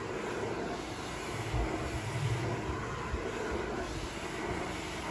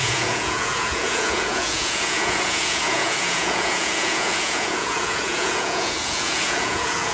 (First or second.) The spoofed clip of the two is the second